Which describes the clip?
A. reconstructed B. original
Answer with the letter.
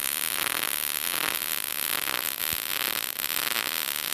B